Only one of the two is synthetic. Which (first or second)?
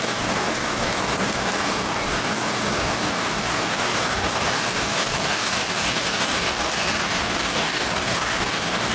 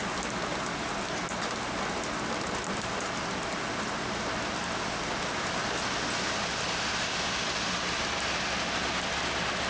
first